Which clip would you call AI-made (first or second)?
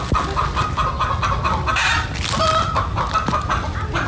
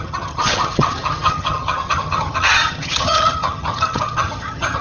second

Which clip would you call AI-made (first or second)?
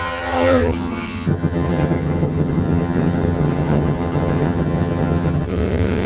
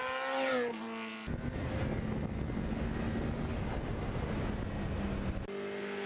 first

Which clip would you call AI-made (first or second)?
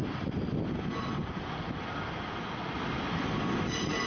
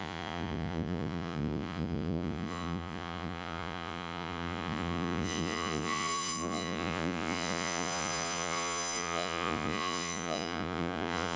second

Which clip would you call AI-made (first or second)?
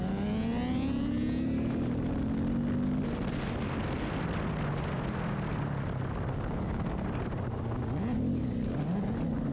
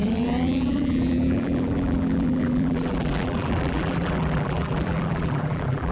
second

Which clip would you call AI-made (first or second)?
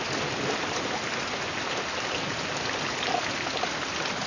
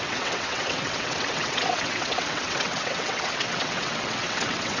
second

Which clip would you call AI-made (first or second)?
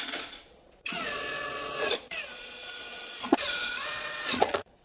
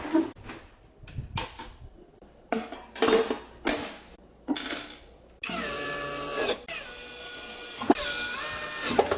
first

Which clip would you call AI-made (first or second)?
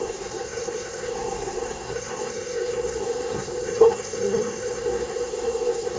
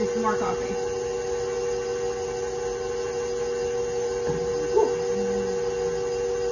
first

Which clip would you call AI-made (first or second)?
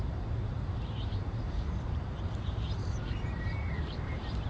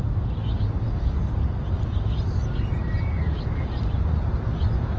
first